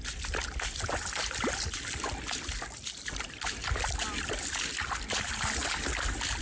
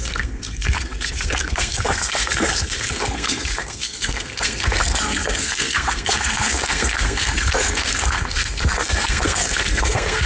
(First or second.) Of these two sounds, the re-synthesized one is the second